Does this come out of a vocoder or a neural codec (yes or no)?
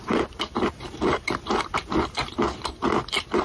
yes